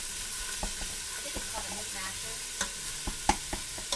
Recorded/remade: recorded